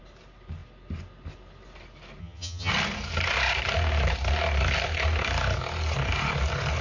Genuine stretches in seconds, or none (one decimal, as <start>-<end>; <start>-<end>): 0.0-2.2; 2.7-6.8